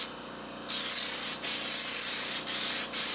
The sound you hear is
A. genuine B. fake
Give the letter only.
A